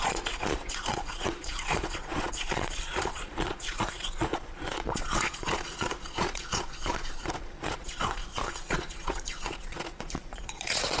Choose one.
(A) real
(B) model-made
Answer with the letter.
B